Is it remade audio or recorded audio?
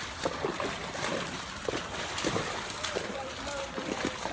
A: recorded